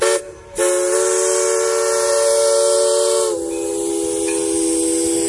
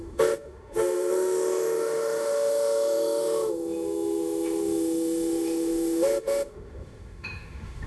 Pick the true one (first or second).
first